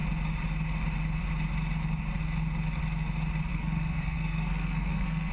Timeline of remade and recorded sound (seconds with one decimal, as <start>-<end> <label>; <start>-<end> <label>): 0.0-3.5 recorded; 3.5-5.3 remade